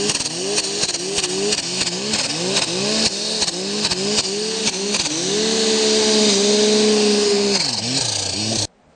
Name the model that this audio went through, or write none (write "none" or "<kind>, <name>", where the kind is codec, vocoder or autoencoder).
none